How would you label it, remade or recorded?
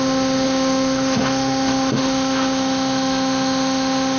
remade